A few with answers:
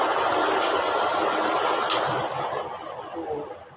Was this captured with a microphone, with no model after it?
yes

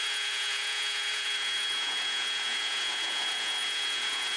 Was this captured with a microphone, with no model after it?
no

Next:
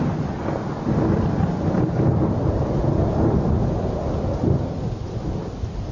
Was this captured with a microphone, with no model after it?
yes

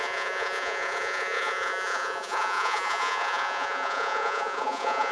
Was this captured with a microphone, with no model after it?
no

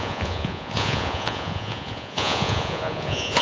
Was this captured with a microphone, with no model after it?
no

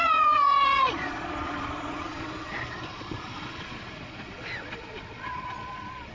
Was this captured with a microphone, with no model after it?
no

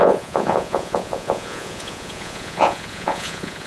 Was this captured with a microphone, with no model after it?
no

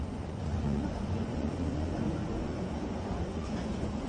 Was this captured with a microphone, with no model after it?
no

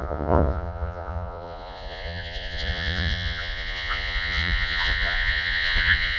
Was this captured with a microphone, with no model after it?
no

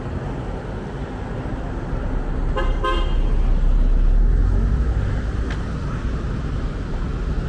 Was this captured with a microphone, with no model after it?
yes